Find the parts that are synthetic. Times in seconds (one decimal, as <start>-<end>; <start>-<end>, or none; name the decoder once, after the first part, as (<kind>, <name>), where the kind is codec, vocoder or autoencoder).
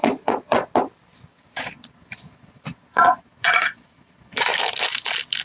0.0-0.7 (vocoder, Vocos); 1.3-4.5